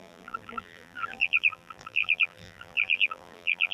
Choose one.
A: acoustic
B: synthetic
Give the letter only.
B